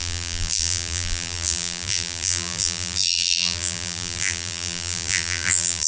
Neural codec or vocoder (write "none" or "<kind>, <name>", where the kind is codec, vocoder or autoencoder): vocoder, BigVGAN v2